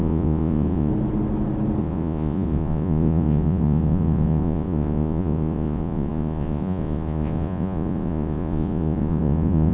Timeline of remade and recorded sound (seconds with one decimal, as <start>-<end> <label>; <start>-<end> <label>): 0.0-0.9 remade; 0.9-1.8 recorded; 1.8-9.7 remade